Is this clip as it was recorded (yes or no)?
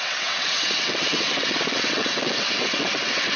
no